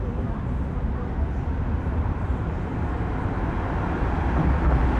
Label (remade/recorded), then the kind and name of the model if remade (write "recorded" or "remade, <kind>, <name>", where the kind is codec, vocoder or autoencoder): recorded